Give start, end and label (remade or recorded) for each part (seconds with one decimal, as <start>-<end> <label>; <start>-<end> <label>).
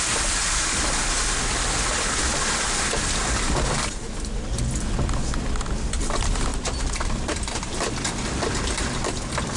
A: 0.0-6.5 recorded; 6.5-7.7 remade; 7.7-9.6 recorded